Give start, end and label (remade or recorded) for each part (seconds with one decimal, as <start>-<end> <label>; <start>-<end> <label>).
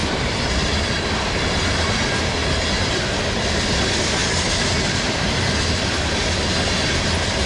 0.0-1.4 remade; 1.4-4.2 recorded; 4.2-5.4 remade; 5.4-7.5 recorded